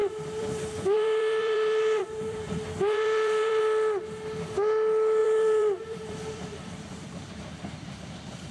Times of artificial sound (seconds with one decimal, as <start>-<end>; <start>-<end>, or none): 0.0-3.6; 5.2-8.1